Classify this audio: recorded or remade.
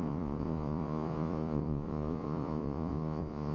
remade